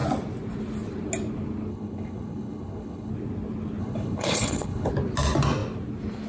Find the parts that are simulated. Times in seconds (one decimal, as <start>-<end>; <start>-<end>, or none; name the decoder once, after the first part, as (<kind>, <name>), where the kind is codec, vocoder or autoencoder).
1.7-3.1 (codec, HILCodec); 3.8-4.9